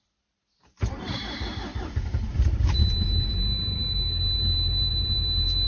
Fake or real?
fake